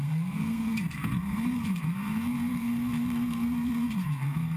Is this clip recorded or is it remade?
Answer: remade